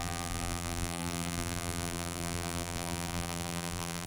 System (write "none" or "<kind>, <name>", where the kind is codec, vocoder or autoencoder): vocoder, BigVGAN v2